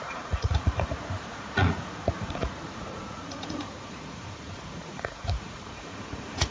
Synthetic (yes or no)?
yes